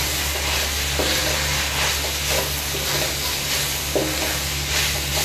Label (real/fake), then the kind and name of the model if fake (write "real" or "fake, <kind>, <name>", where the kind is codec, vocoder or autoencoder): real